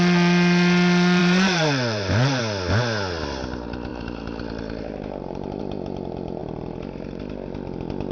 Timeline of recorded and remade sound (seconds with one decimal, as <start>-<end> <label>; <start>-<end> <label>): 0.0-1.2 recorded; 1.2-2.4 remade; 2.4-3.9 recorded; 3.9-5.6 remade; 5.6-8.1 recorded